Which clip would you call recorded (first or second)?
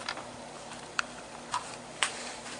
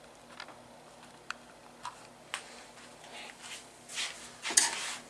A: second